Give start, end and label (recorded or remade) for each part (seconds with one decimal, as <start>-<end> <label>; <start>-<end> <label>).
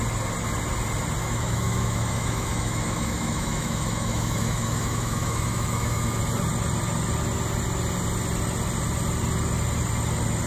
0.0-1.2 recorded; 1.2-6.2 remade; 6.2-10.5 recorded